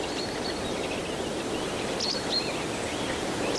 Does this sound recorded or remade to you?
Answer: recorded